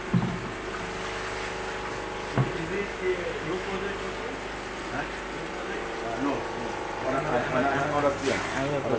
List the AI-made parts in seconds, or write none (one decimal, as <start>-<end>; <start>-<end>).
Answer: 2.9-3.5